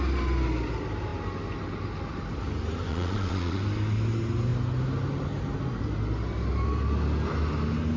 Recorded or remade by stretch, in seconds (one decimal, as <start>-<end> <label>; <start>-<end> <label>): 0.0-2.9 recorded; 2.9-3.6 remade; 3.6-8.0 recorded